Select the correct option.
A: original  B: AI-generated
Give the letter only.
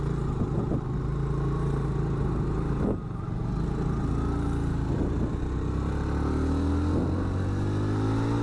A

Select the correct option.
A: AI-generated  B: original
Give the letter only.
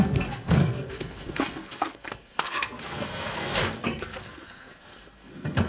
A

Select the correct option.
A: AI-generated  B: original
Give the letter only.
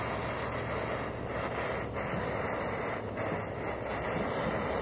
B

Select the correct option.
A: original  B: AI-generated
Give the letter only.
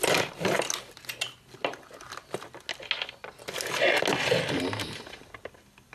A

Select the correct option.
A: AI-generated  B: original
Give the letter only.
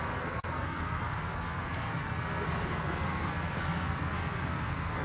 A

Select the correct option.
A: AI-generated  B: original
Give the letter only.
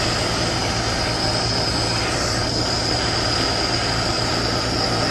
B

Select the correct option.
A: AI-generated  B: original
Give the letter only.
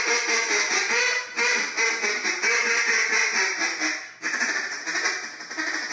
B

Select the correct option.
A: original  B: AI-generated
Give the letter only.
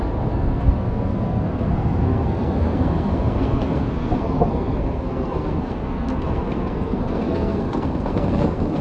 B